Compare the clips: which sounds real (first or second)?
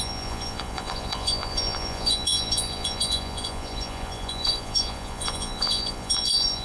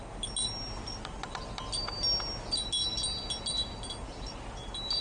second